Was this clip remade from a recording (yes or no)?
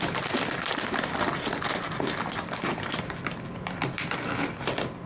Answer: no